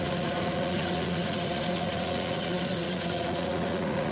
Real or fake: fake